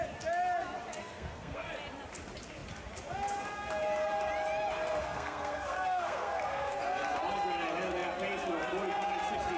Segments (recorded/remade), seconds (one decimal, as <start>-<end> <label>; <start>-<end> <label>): 0.0-1.0 recorded; 1.0-1.7 remade; 1.7-5.0 recorded; 5.0-6.8 remade; 6.8-9.6 recorded